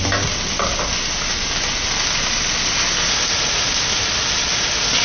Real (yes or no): yes